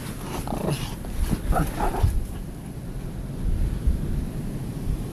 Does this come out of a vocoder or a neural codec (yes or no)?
no